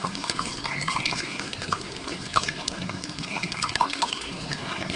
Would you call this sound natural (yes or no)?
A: no